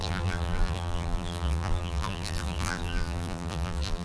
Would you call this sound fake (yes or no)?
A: yes